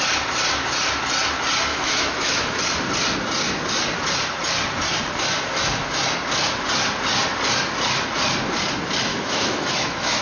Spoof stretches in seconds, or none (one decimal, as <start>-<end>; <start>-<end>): 1.7-2.6; 9.1-10.2